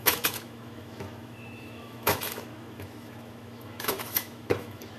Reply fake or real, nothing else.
fake